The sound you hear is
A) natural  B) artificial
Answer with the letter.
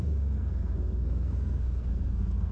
B